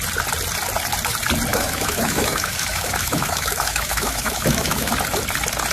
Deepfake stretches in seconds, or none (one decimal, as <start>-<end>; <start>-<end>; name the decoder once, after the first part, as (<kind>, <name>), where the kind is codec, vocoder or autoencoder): 1.5-4.9 (autoencoder, DAC-VAE)